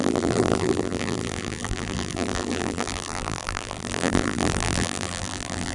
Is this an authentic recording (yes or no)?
no